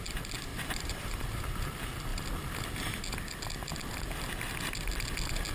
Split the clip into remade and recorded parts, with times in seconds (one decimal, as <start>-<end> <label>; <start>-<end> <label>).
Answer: 0.0-0.5 recorded; 0.5-1.4 remade; 1.4-5.5 recorded